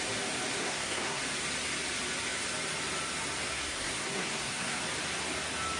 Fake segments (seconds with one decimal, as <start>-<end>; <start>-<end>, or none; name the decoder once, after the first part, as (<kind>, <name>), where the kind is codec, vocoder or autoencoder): 0.6-1.2 (codec, SNAC); 3.5-4.8